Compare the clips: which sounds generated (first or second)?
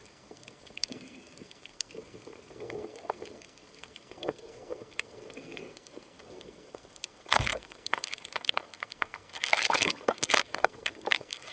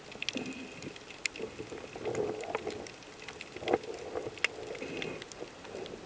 first